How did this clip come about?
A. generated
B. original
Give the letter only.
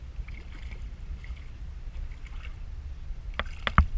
B